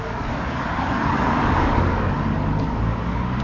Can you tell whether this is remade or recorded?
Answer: remade